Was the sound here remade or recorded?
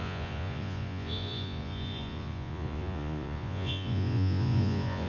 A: remade